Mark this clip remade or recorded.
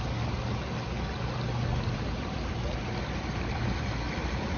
recorded